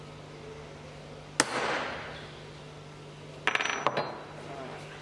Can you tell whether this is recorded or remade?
recorded